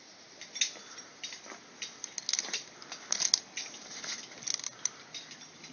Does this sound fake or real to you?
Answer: real